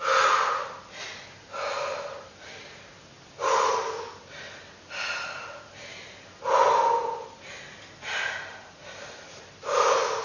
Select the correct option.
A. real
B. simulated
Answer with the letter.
A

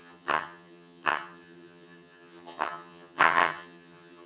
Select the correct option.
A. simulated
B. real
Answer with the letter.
A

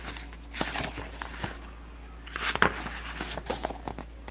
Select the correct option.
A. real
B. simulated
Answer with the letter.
A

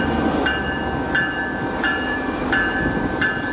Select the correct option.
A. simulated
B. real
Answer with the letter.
B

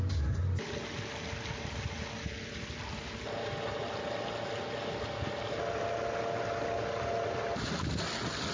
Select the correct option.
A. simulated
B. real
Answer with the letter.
B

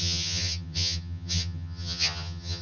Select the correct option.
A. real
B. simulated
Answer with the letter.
B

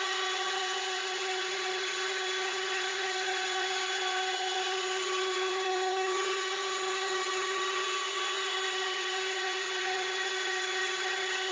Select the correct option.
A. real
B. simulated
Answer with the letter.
B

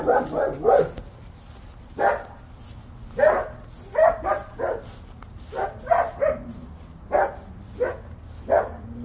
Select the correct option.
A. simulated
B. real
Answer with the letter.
B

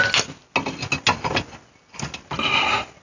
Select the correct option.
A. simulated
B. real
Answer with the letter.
B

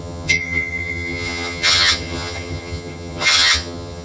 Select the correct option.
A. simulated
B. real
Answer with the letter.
A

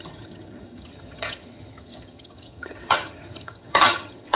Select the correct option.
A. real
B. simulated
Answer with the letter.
B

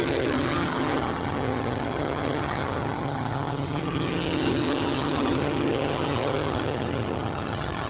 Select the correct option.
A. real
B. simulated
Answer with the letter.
B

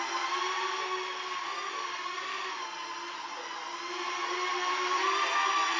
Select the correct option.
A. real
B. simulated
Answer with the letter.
A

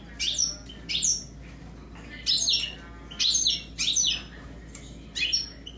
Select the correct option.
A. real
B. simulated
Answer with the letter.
A